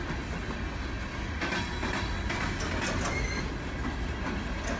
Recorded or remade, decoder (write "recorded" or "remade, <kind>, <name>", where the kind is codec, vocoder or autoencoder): recorded